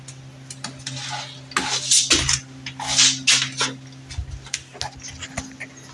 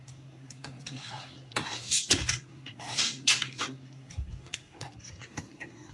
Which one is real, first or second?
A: first